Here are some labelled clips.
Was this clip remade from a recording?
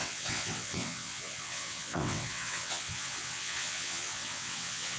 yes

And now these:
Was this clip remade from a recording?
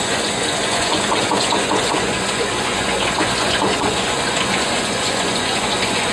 yes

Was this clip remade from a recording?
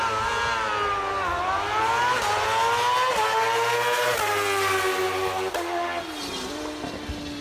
no